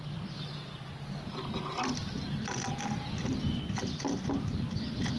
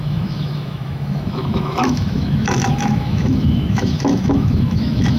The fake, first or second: second